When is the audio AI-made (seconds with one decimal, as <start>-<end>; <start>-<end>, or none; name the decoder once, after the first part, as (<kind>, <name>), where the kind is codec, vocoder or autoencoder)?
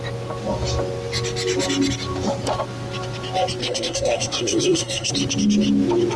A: 3.6-5.1 (codec, SNAC)